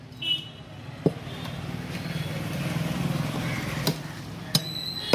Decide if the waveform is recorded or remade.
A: recorded